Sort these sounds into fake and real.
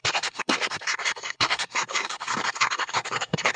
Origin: fake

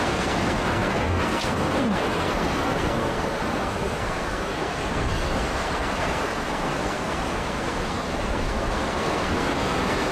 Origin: fake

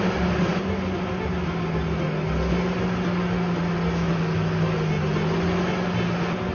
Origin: real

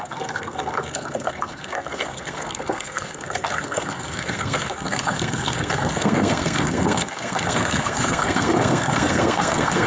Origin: fake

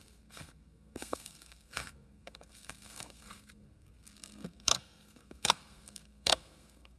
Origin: fake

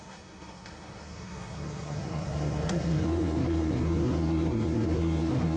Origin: fake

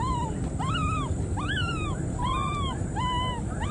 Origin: real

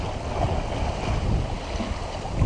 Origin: real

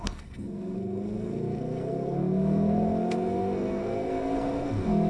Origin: fake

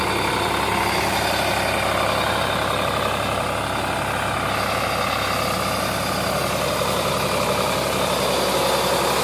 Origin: real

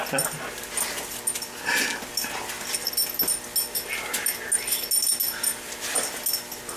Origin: real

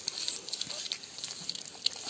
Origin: real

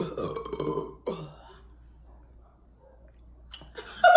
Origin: real